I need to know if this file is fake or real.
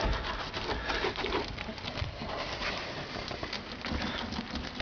real